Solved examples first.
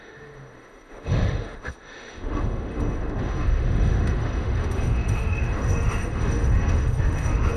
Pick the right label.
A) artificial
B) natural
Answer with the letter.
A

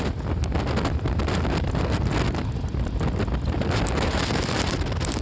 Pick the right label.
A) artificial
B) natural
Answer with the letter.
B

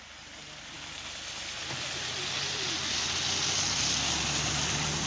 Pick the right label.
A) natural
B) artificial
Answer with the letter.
A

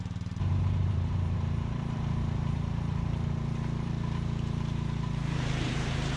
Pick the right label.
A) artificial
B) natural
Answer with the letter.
A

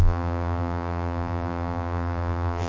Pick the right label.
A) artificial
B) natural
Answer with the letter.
A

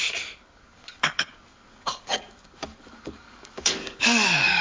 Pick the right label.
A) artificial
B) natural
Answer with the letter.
A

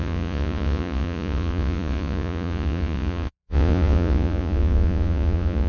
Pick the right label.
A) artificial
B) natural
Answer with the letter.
A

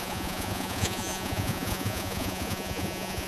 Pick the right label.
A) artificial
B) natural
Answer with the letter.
A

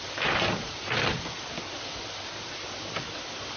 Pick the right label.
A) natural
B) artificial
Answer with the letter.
A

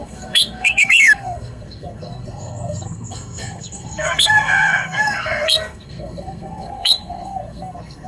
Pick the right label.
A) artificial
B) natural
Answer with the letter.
A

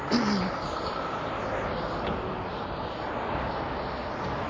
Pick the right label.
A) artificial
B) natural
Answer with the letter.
B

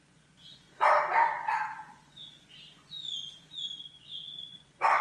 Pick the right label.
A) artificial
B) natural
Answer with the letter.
A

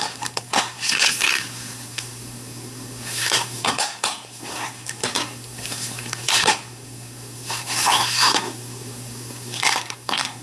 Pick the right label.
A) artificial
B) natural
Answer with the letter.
A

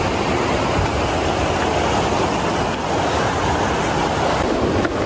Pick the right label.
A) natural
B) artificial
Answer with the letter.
A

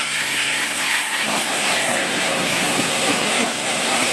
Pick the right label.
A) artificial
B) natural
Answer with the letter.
A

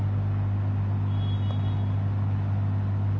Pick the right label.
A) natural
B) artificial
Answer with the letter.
A